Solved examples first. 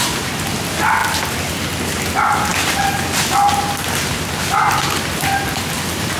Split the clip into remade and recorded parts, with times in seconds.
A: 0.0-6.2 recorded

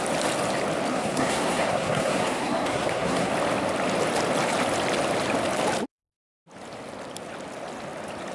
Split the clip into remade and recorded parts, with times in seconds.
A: 0.0-0.9 recorded; 0.9-3.3 remade; 3.3-8.3 recorded

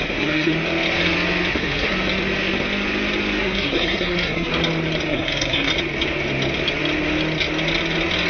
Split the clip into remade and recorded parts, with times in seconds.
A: 0.0-0.5 remade; 0.5-1.5 recorded; 1.5-1.9 remade; 1.9-3.4 recorded; 3.4-4.5 remade; 4.5-5.1 recorded; 5.1-5.7 remade; 5.7-8.3 recorded

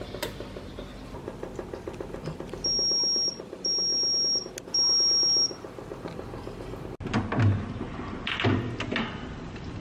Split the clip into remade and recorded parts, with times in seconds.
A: 0.0-9.8 recorded